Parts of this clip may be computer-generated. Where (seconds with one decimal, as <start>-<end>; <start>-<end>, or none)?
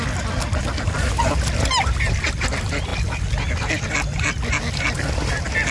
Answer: none